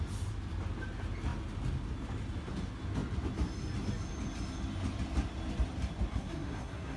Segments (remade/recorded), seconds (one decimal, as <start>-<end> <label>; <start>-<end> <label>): 0.0-6.1 recorded; 6.1-7.0 remade